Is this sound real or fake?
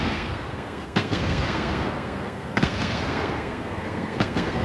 fake